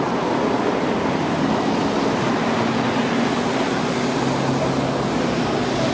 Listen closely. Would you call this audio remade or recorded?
recorded